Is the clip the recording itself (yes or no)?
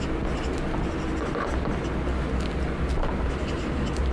yes